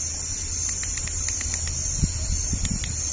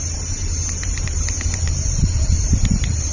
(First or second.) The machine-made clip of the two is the second